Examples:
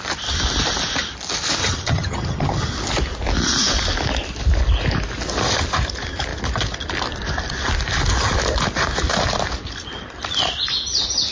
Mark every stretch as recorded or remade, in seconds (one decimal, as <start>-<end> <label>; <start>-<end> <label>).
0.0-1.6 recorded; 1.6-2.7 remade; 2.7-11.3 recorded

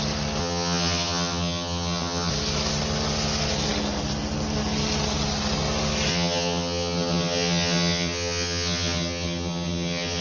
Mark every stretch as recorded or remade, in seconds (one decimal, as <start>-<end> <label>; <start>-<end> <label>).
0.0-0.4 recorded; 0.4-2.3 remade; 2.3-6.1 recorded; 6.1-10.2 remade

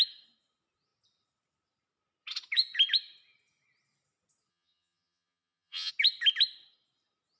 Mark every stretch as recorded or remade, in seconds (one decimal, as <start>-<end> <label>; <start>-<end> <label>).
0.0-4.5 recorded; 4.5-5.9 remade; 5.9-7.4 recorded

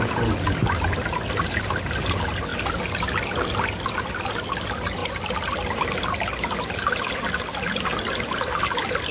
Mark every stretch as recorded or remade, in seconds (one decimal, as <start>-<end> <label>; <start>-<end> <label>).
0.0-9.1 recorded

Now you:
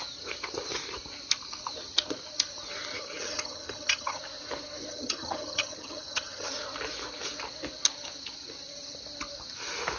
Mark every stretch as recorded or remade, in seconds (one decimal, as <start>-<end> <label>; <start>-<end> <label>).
0.0-2.9 recorded; 2.9-4.2 remade; 4.2-4.9 recorded; 4.9-6.5 remade; 6.5-10.0 recorded

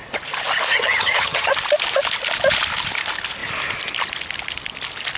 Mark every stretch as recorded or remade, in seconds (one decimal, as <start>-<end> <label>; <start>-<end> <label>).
0.0-0.7 recorded; 0.7-1.5 remade; 1.5-5.2 recorded

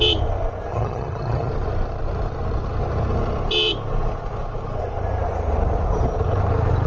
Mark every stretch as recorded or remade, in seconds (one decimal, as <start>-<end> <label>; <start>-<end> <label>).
0.0-0.7 recorded; 0.7-1.5 remade; 1.5-6.9 recorded

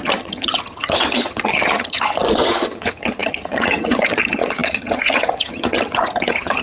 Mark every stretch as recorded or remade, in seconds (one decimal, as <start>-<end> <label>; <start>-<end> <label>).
0.0-6.6 remade